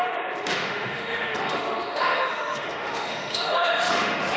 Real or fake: fake